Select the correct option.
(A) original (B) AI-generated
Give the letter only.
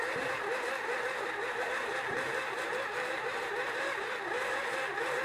B